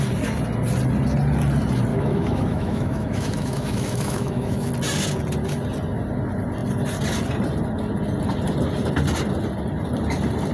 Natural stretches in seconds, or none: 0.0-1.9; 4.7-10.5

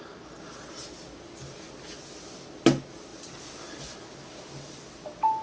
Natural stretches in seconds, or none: 0.0-5.4

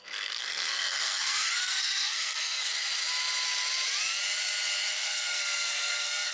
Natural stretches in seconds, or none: 2.7-4.9

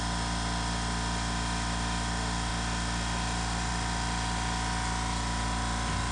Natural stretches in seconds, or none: 0.0-6.1

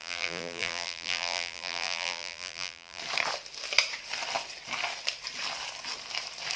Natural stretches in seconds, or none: 3.0-6.6

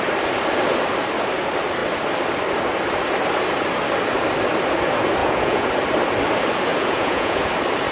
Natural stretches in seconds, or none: 0.0-5.2; 5.7-6.7; 7.5-7.9

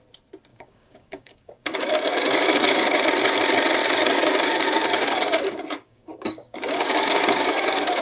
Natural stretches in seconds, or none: 0.0-0.5; 3.0-3.8